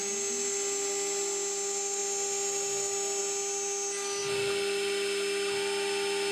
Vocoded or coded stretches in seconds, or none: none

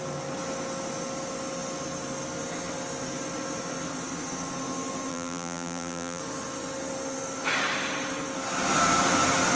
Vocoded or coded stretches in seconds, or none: 5.1-6.2 (vocoder, BigVGAN v2)

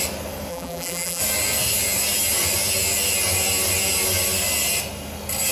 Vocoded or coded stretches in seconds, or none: 0.5-1.2 (vocoder, BigVGAN v2)

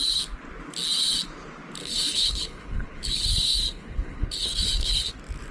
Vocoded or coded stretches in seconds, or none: 1.8-5.1 (codec, HILCodec)

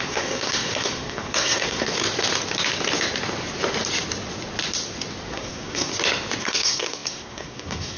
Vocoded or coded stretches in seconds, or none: 0.0-2.0 (codec, SNAC); 5.3-5.9; 6.4-8.0

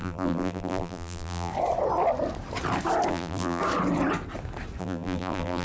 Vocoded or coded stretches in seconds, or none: 0.0-1.5 (vocoder, BigVGAN v2); 3.1-3.6; 4.8-5.6

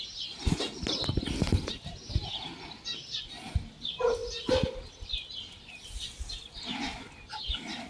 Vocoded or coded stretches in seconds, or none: none

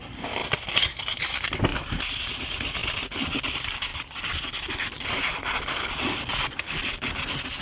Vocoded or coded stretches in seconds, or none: none